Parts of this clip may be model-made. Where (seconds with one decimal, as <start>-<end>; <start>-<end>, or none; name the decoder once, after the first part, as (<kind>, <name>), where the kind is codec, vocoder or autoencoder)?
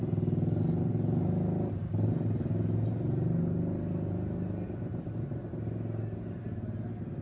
none